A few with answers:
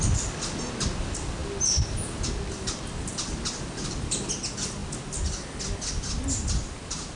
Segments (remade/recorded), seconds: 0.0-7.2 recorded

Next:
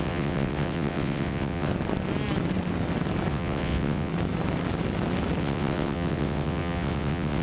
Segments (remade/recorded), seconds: 0.0-1.7 remade; 1.7-3.3 recorded; 3.3-4.1 remade; 4.1-5.4 recorded; 5.4-7.4 remade

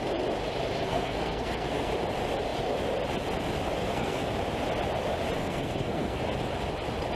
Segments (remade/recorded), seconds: 0.0-0.8 recorded; 0.8-1.9 remade; 1.9-3.8 recorded; 3.8-4.3 remade; 4.3-5.4 recorded; 5.4-6.2 remade; 6.2-7.2 recorded

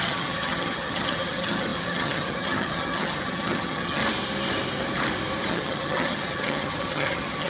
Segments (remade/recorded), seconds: 0.0-4.0 remade; 4.0-5.5 recorded; 5.5-7.5 remade

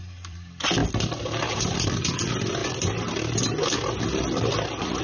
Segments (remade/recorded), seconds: 0.0-0.8 remade; 0.8-1.5 recorded; 1.5-2.6 remade; 2.6-4.0 recorded; 4.0-5.0 remade